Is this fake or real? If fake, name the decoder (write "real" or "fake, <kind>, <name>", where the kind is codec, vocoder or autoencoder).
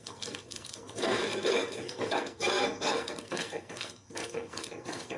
fake, codec, SNAC